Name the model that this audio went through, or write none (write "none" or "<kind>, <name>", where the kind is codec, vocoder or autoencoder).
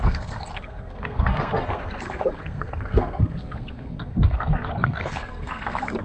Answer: codec, SNAC